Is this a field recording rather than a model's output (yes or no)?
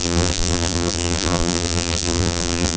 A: no